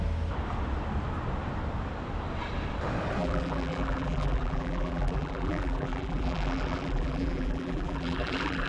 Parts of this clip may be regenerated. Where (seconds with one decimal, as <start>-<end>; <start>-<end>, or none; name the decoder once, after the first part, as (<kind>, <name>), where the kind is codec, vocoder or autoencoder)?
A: 3.2-8.7 (vocoder, BigVGAN v2)